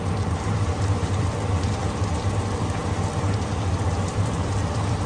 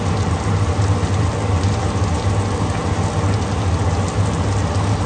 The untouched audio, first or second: second